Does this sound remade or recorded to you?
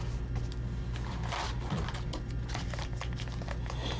recorded